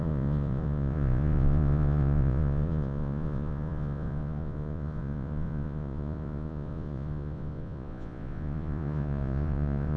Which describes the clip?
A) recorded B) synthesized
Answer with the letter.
B